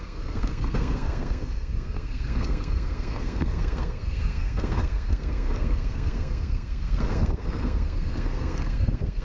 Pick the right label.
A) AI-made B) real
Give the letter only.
A